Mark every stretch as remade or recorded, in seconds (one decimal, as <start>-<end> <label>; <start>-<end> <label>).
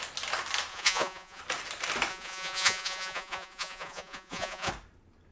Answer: 0.0-0.7 recorded; 0.7-1.4 remade; 1.4-2.1 recorded; 2.1-4.7 remade; 4.7-5.3 recorded